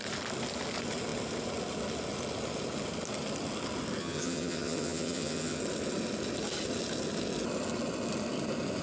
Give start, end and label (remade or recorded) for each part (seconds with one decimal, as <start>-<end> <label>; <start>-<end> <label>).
0.0-4.0 recorded; 4.0-5.6 remade; 5.6-8.8 recorded